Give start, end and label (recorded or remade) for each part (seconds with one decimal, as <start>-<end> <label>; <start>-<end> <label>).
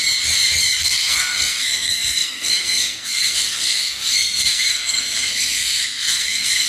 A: 0.0-0.8 recorded; 0.8-6.7 remade